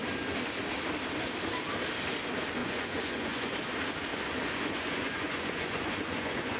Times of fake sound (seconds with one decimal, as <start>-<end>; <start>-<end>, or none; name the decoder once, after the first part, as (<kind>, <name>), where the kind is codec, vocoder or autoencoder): 2.6-3.5 (vocoder, Vocos); 4.1-6.6